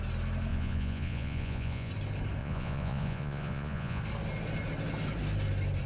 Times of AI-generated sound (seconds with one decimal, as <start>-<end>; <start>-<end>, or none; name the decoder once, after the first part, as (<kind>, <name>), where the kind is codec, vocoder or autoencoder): 0.5-1.9 (vocoder, Vocos); 2.4-4.0